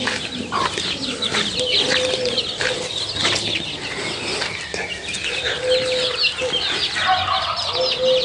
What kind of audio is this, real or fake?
real